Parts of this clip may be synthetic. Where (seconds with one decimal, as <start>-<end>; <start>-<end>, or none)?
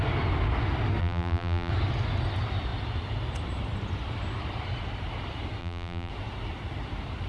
1.0-1.7; 5.6-6.1